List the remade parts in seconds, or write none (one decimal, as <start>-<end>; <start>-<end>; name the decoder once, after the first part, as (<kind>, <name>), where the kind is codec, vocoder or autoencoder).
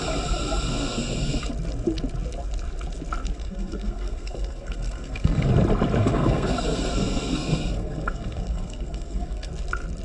0.7-1.4 (codec, SNAC); 3.4-5.5; 6.0-9.5